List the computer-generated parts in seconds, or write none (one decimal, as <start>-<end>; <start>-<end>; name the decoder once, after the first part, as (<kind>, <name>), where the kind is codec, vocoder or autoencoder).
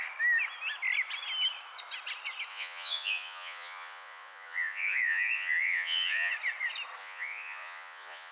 2.5-6.3 (vocoder, Vocos); 7.0-8.3